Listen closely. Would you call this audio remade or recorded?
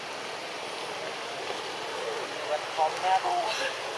recorded